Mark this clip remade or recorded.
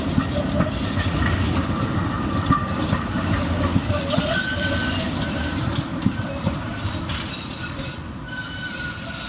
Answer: recorded